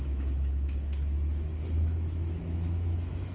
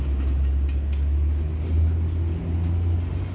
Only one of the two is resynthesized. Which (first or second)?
first